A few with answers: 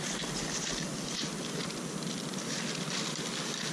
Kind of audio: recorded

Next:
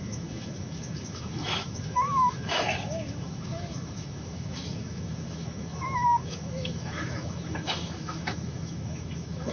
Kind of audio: remade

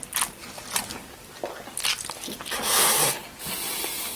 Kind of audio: recorded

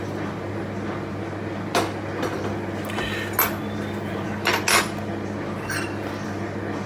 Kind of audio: recorded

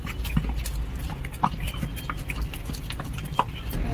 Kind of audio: recorded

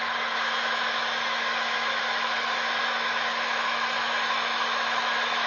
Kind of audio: remade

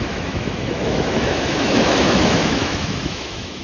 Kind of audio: remade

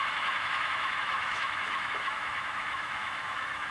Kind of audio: remade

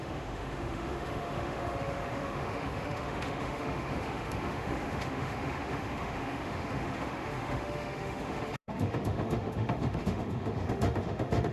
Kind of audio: remade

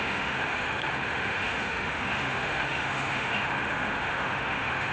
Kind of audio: remade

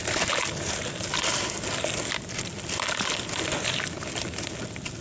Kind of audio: recorded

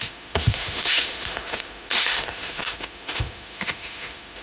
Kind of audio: remade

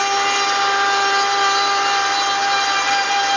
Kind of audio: recorded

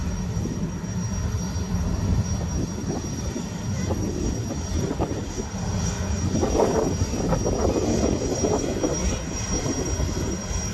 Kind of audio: recorded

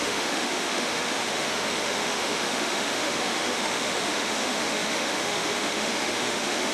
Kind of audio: remade